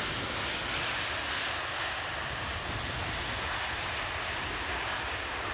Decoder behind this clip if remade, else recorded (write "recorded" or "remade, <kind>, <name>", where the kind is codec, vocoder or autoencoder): recorded